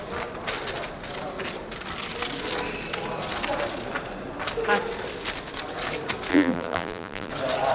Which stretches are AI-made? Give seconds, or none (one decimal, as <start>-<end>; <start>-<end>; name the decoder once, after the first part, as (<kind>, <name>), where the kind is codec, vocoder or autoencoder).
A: 6.3-7.3 (vocoder, BigVGAN v2)